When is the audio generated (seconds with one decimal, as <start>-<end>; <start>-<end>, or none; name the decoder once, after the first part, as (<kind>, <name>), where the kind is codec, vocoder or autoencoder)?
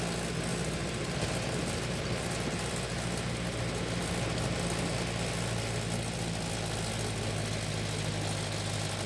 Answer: 0.5-2.7 (vocoder, BigVGAN v2)